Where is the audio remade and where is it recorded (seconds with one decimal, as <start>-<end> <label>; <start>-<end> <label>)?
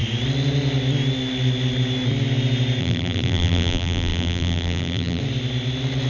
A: 0.0-2.8 recorded; 2.8-5.2 remade; 5.2-6.1 recorded